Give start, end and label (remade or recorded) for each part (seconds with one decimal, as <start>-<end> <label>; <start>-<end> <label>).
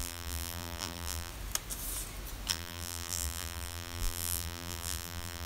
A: 0.0-1.3 remade; 1.3-2.5 recorded; 2.5-5.5 remade